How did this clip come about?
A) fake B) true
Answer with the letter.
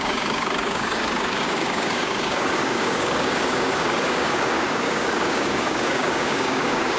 A